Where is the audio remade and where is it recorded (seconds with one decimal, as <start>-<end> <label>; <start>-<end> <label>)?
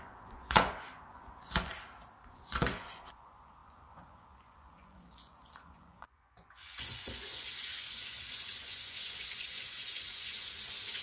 0.0-1.7 remade; 1.7-2.3 recorded; 2.3-11.0 remade